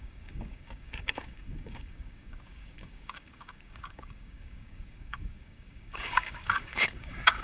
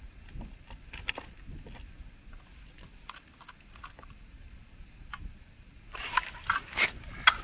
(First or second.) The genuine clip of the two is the second